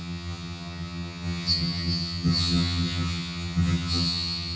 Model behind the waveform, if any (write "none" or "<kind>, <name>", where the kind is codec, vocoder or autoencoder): vocoder, HiFi-GAN